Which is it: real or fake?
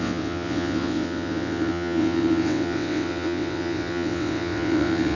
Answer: fake